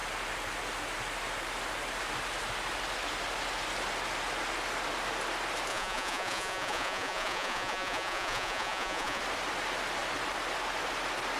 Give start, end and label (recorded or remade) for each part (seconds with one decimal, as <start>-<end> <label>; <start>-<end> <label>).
0.0-5.7 recorded; 5.7-9.2 remade; 9.2-11.4 recorded